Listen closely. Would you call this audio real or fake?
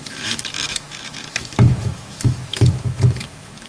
fake